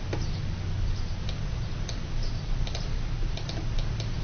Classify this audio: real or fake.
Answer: real